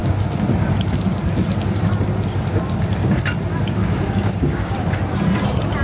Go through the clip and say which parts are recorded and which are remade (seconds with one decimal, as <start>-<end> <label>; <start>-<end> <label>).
0.0-3.8 recorded; 3.8-4.9 remade; 4.9-5.8 recorded